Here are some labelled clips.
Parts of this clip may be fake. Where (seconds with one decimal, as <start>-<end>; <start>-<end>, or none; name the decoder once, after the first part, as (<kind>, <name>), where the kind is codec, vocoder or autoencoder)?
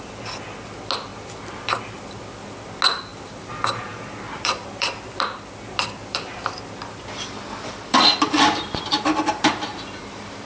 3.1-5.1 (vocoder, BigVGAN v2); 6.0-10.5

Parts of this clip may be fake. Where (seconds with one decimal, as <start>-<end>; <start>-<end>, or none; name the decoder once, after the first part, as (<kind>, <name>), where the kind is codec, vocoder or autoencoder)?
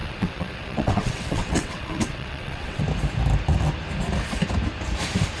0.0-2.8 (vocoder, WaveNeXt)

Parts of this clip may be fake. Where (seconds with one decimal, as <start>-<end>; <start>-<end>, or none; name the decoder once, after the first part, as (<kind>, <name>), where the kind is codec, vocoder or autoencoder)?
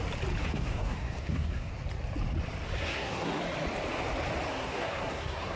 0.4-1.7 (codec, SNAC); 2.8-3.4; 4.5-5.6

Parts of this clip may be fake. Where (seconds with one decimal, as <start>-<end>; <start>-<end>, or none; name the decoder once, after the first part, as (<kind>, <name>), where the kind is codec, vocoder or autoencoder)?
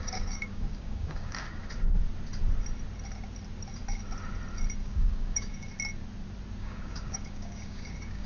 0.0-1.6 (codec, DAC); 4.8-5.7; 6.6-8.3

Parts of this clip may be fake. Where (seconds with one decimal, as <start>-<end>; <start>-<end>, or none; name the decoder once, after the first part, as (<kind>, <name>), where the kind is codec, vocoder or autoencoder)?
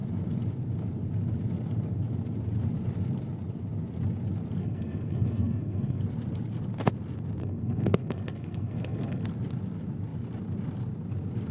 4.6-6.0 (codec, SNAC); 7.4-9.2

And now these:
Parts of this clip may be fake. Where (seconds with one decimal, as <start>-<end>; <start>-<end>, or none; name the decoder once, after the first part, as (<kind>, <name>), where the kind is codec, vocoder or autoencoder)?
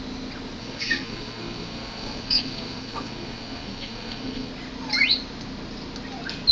0.6-4.5 (codec, SNAC)